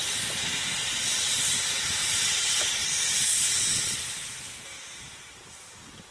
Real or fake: real